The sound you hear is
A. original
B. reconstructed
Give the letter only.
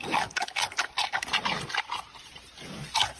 A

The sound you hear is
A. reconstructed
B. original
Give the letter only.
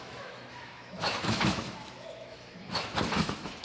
A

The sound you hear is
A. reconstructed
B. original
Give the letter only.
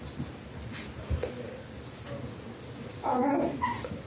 B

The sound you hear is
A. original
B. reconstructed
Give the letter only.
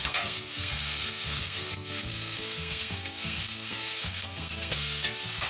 B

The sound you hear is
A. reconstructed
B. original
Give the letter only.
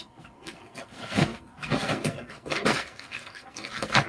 A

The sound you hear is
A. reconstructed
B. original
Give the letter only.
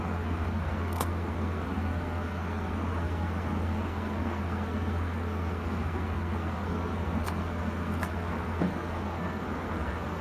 A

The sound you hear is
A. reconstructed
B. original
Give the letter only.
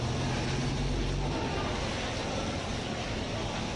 B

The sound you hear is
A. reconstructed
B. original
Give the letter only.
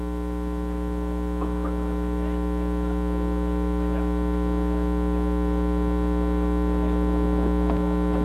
B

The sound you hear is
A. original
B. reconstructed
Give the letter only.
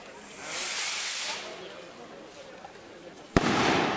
A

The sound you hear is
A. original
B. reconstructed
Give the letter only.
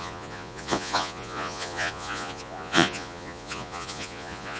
B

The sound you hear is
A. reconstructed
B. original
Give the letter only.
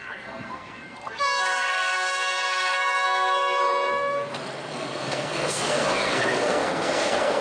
A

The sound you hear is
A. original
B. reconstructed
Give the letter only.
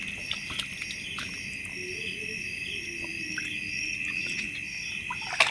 A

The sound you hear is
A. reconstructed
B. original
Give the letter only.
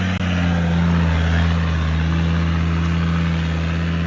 B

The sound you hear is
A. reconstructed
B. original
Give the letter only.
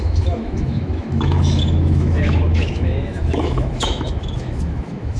A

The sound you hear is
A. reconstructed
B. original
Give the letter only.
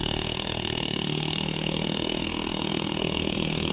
A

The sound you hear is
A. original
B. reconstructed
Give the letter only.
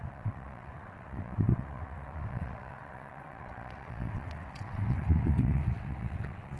B